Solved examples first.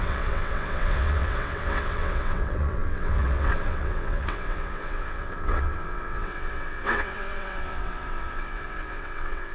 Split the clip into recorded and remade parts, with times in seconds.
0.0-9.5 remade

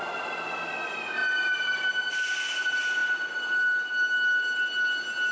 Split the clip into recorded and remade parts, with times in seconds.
0.0-5.3 recorded

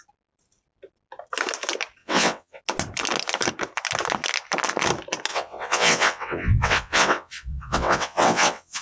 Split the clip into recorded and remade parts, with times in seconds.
0.0-2.0 recorded; 2.0-2.6 remade; 2.6-5.3 recorded; 5.3-8.8 remade

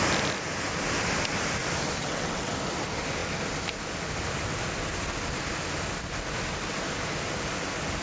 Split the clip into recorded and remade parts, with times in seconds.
0.0-2.0 recorded; 2.0-2.5 remade; 2.5-8.0 recorded

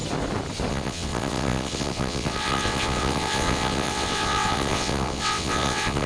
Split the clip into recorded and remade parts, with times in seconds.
0.0-0.7 recorded; 0.7-6.1 remade

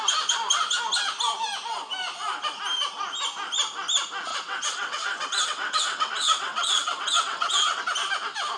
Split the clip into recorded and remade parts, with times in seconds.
0.0-4.3 recorded; 4.3-7.8 remade; 7.8-8.6 recorded

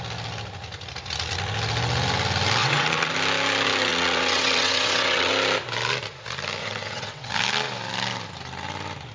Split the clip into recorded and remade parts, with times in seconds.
0.0-2.6 recorded; 2.6-3.1 remade; 3.1-3.9 recorded; 3.9-5.3 remade; 5.3-6.6 recorded; 6.6-7.3 remade; 7.3-9.1 recorded